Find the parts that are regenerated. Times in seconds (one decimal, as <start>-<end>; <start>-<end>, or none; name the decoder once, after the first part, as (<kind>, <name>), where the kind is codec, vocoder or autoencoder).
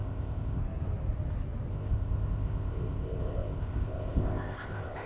0.0-0.6 (codec, ZipCodec); 1.7-5.1